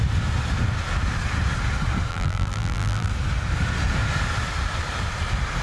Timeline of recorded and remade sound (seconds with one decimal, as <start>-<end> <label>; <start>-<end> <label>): 0.0-2.1 recorded; 2.1-3.1 remade; 3.1-5.6 recorded